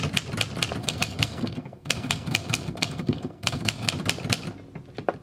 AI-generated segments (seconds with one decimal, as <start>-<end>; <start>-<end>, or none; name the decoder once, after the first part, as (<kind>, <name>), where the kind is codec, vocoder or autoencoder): 0.8-3.9 (codec, SNAC)